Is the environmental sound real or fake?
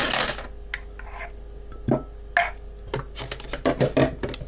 real